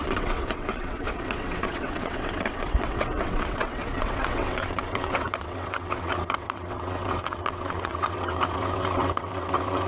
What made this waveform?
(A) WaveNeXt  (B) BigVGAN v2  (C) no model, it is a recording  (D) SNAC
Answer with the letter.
A